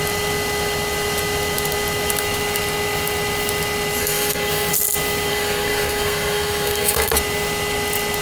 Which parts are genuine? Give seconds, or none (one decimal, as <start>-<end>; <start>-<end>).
0.0-4.0; 4.7-5.3; 7.1-8.2